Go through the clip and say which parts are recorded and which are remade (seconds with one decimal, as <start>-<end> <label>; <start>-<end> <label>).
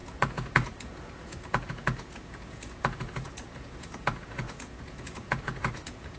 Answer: 0.0-6.2 remade